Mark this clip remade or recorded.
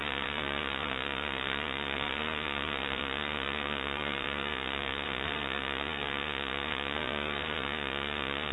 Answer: remade